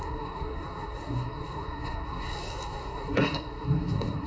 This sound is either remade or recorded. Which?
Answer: remade